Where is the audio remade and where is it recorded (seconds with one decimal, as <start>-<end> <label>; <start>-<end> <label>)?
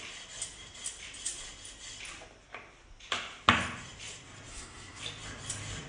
0.0-4.5 recorded; 4.5-5.0 remade; 5.0-5.9 recorded